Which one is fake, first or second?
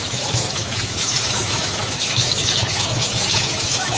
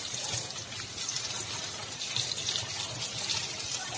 first